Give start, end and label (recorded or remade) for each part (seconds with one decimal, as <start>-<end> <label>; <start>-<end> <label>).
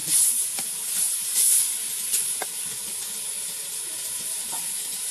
0.0-5.1 recorded